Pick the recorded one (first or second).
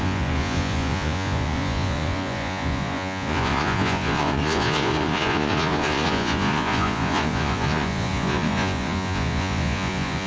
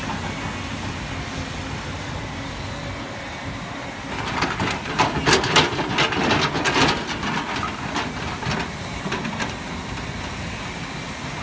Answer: second